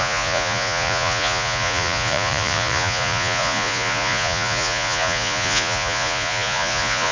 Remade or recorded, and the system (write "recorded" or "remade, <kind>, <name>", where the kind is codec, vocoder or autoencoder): remade, vocoder, Vocos